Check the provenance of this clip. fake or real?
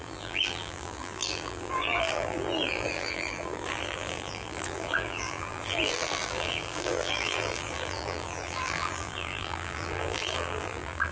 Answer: fake